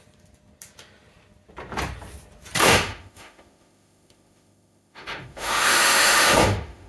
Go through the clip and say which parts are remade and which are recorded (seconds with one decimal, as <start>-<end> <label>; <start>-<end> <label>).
0.0-2.6 recorded; 2.6-6.9 remade